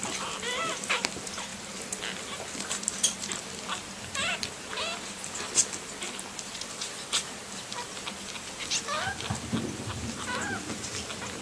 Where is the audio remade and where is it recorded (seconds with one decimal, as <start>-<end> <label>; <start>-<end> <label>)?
0.0-6.5 recorded; 6.5-7.2 remade; 7.2-11.4 recorded